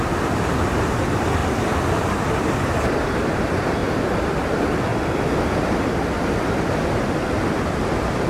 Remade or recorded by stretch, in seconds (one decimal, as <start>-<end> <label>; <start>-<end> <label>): 0.0-1.4 remade; 1.4-2.3 recorded; 2.3-3.8 remade; 3.8-4.4 recorded; 4.4-4.9 remade; 4.9-7.8 recorded; 7.8-8.3 remade